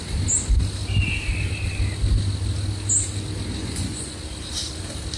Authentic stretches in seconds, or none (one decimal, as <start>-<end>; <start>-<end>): 0.0-3.6; 4.2-5.2